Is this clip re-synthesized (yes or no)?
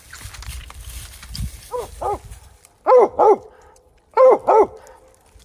no